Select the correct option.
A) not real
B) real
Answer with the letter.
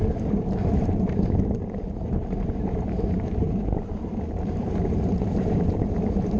A